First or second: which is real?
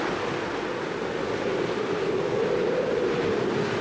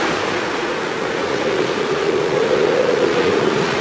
first